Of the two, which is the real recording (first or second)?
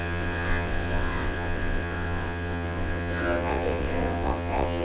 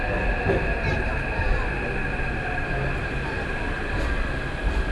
second